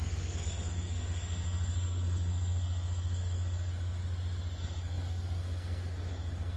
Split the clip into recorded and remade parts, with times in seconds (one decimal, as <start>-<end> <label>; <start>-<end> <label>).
0.0-4.0 remade; 4.0-4.6 recorded; 4.6-6.6 remade